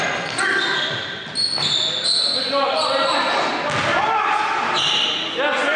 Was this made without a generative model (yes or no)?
yes